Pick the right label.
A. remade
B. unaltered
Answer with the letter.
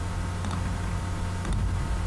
B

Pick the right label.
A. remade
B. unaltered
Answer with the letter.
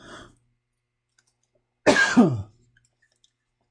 B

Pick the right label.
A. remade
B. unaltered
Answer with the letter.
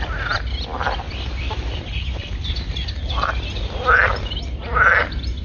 A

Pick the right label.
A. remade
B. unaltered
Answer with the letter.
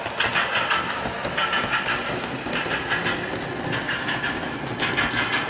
B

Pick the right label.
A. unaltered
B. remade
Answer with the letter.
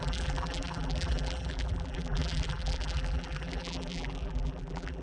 B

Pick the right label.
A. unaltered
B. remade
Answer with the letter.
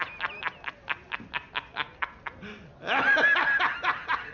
A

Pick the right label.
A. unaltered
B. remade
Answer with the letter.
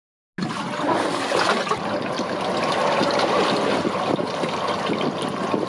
A